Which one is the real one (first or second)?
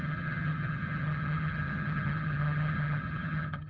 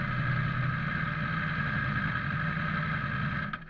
second